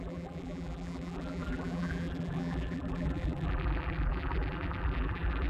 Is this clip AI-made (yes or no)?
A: yes